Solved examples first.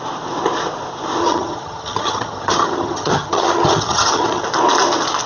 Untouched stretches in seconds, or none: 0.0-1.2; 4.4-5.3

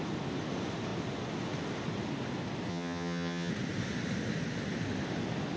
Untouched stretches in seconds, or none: 0.0-2.7; 3.5-5.6

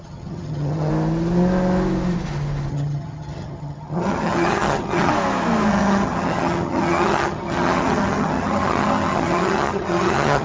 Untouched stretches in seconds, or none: 0.9-2.7; 5.1-5.7

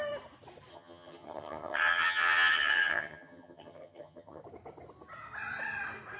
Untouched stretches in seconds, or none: 0.0-0.7; 4.4-6.2

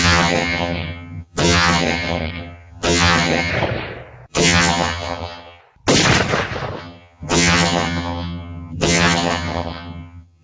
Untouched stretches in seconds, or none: 3.5-4.3; 5.6-6.8